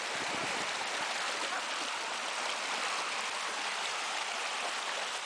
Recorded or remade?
recorded